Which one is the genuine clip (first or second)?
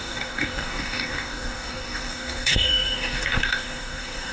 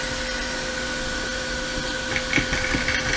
second